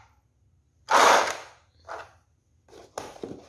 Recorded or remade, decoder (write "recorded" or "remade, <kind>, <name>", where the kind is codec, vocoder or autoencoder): recorded